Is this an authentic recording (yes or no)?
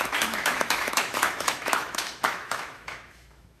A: no